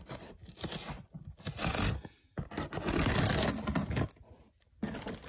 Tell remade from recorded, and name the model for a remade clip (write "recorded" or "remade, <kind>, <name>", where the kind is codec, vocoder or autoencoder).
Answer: recorded